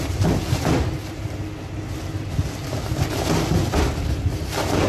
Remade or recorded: recorded